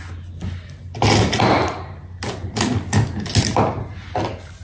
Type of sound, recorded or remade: recorded